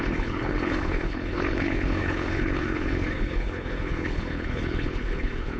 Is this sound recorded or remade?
remade